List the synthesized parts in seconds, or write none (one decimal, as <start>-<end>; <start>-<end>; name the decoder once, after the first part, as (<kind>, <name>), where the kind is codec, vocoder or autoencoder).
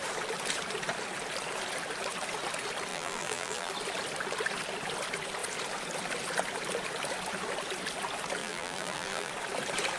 2.9-3.7 (vocoder, BigVGAN v2); 8.4-9.3